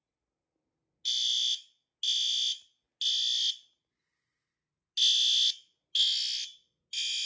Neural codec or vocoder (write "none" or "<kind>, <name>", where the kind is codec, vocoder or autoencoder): none